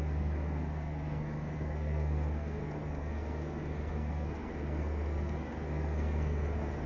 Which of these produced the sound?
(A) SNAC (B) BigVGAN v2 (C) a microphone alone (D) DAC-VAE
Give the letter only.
A